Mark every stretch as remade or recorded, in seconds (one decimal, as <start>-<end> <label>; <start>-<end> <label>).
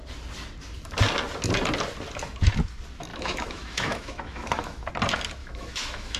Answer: 0.0-3.1 recorded; 3.1-4.9 remade; 4.9-5.4 recorded; 5.4-6.2 remade